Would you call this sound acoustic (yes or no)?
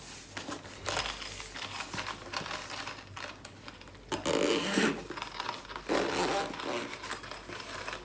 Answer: yes